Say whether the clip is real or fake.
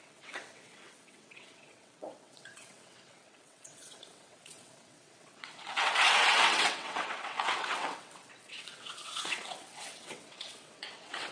fake